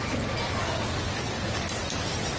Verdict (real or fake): real